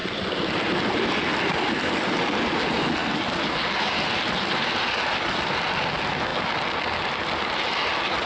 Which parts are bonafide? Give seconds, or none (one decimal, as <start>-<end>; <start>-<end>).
0.0-8.3